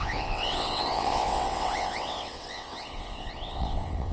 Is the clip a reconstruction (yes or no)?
yes